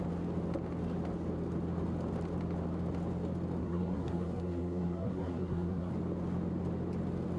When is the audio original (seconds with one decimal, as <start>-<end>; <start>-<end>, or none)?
0.0-3.6; 5.9-7.4